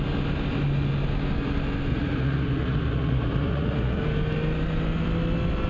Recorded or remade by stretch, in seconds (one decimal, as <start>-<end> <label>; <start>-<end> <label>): 0.0-1.9 recorded; 1.9-4.0 remade; 4.0-5.7 recorded